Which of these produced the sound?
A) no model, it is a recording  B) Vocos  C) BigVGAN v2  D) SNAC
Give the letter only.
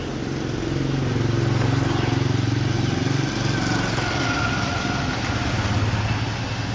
A